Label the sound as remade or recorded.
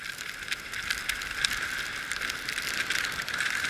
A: recorded